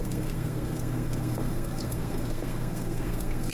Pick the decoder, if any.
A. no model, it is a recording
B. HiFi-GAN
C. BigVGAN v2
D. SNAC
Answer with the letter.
D